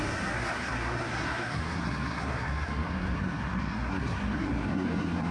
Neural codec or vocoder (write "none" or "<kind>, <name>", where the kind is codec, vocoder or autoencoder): codec, SNAC